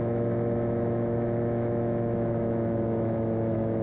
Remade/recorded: remade